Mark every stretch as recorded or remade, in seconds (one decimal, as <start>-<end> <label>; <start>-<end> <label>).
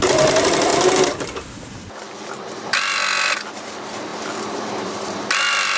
0.0-0.7 remade; 0.7-3.5 recorded; 3.5-5.8 remade